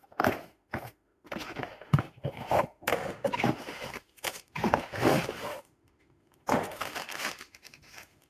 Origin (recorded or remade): remade